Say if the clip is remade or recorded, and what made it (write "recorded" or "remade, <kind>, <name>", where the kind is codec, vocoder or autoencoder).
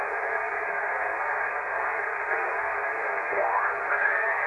remade, codec, SNAC